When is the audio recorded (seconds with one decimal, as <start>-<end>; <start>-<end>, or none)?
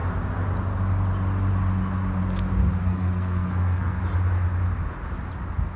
0.0-2.8; 4.0-5.8